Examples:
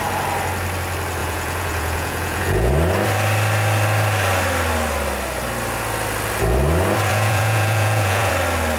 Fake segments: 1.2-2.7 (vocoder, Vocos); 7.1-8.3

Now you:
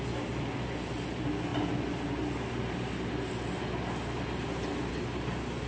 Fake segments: none

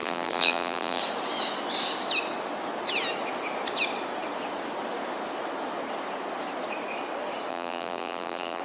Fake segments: 0.0-1.0 (vocoder, BigVGAN v2); 7.5-8.6

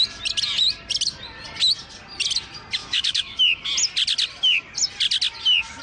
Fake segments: 2.8-3.4 (autoencoder, DAC-VAE)

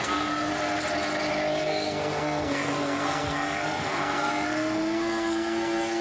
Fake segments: 0.0-0.5 (codec, SNAC); 1.6-6.0

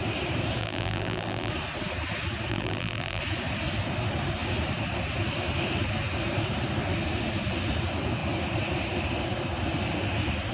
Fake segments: 0.6-1.5 (vocoder, BigVGAN v2); 2.5-3.2

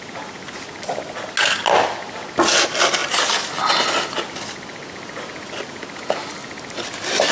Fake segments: none